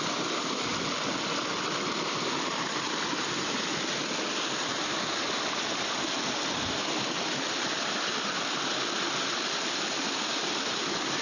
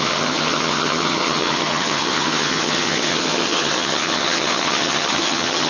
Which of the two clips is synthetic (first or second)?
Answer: second